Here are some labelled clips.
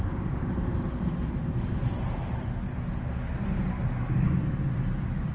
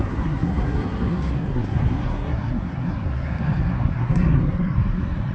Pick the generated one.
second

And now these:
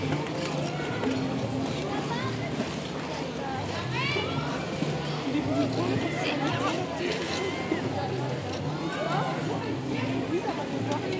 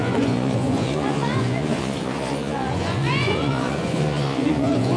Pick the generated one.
second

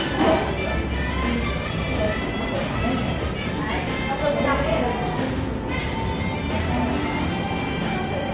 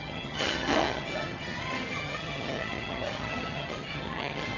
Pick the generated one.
second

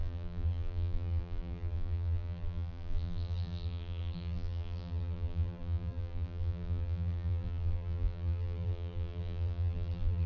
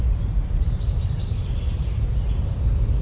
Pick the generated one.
first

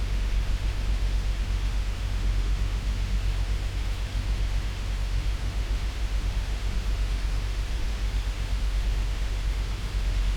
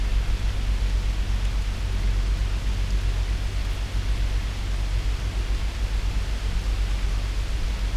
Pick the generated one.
first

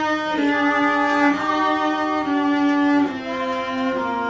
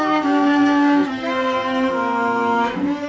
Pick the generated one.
second